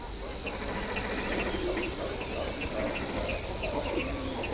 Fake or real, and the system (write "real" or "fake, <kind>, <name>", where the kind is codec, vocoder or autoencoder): real